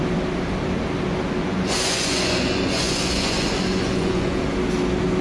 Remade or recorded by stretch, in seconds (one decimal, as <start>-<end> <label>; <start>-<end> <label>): 0.0-1.4 recorded; 1.4-4.4 remade; 4.4-5.2 recorded